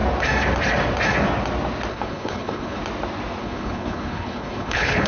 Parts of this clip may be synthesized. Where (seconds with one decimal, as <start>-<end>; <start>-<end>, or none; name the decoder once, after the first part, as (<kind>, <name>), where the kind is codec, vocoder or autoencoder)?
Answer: 1.9-2.8 (codec, HILCodec); 3.4-5.1